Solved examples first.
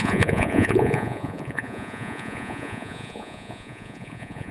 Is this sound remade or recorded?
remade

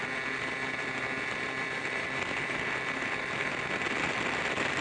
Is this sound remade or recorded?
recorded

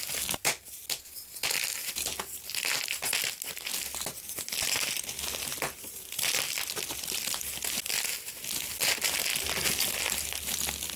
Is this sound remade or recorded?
recorded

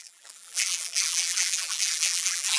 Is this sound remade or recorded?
remade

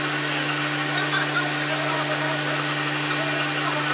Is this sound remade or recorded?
recorded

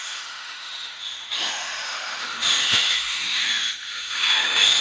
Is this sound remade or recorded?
remade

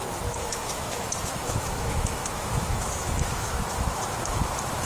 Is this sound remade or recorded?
remade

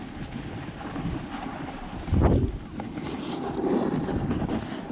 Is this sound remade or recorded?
recorded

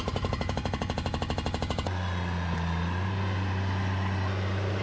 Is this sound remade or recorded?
recorded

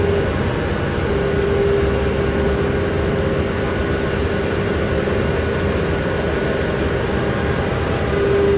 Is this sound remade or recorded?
recorded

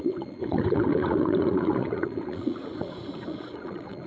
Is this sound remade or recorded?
remade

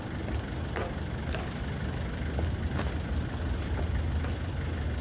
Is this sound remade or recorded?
recorded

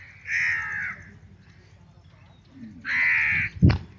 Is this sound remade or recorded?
recorded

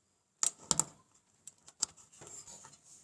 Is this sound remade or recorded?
recorded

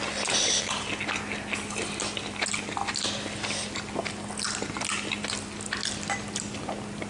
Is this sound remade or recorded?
recorded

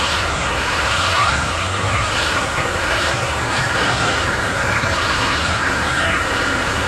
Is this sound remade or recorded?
remade